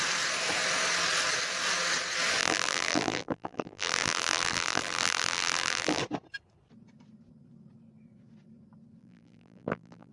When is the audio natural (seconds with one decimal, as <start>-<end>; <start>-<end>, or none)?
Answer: 0.0-2.4; 6.0-9.0